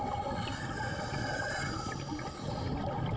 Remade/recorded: recorded